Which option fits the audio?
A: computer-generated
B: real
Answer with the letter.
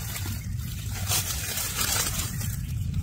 B